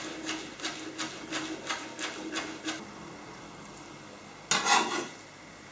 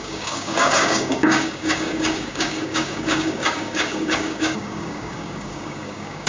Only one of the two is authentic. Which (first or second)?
first